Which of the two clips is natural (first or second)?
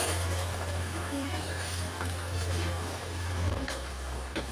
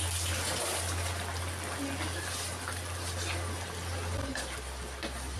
second